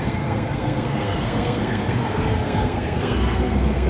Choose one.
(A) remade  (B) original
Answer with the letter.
A